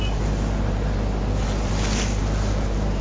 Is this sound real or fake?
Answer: real